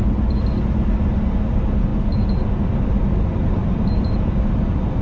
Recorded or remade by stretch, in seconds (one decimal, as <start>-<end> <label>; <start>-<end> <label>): 0.0-5.0 recorded